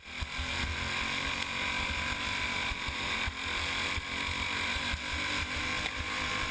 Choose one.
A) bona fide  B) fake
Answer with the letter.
A